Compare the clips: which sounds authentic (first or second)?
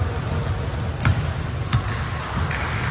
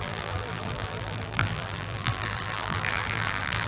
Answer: first